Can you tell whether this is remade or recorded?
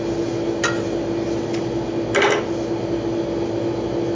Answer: recorded